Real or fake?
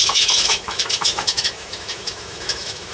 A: fake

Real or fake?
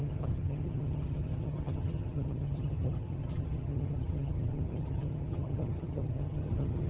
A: fake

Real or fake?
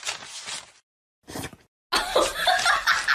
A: real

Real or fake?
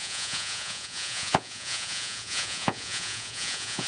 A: fake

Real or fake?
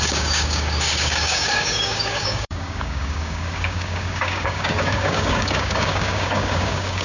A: fake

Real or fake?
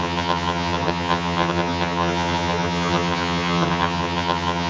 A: fake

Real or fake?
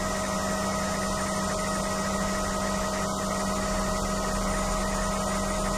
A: real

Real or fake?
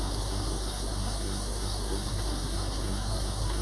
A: fake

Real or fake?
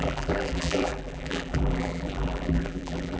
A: fake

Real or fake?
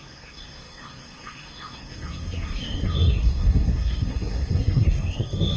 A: fake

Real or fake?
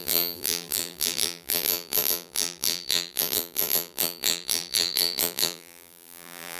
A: fake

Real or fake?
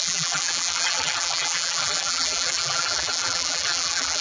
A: fake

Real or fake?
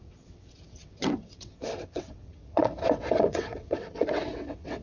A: fake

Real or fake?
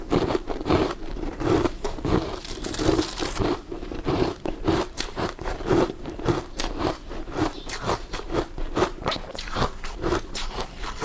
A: fake